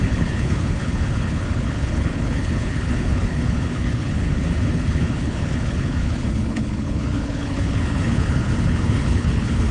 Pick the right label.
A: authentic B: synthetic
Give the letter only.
B